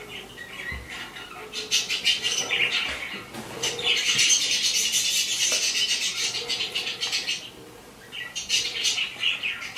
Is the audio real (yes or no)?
yes